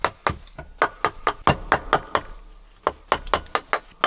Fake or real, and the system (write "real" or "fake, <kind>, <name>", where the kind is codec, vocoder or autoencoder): real